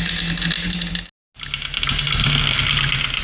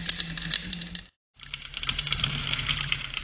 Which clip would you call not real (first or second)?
second